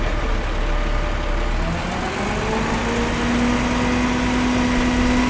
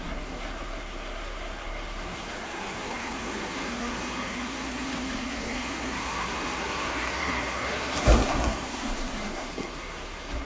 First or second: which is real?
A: first